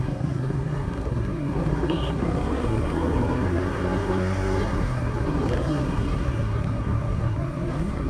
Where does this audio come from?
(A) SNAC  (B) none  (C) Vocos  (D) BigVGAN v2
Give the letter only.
A